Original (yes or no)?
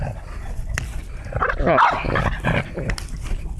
yes